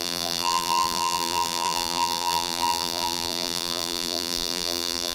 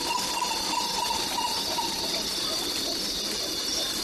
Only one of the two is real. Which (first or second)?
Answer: second